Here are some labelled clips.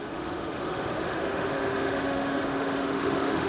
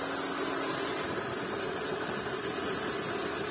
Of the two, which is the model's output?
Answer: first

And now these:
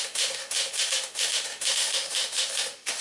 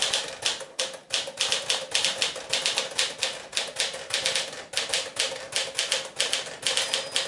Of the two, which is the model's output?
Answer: first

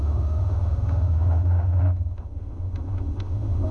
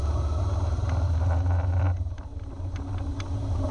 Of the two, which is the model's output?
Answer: first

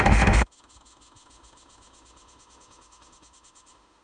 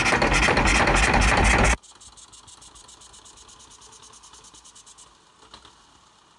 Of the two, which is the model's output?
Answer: first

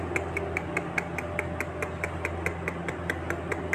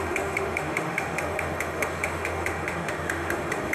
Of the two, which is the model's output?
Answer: second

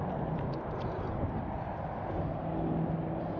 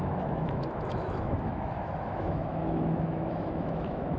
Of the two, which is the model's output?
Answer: second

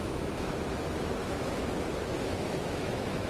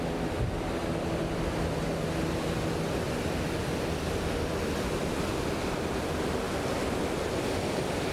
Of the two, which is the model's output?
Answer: first